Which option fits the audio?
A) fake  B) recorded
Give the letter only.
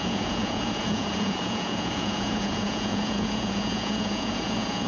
A